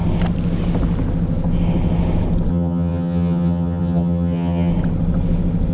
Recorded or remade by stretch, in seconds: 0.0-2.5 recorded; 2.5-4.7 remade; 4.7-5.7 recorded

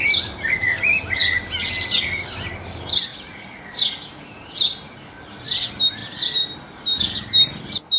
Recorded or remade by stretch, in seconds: 0.0-8.0 recorded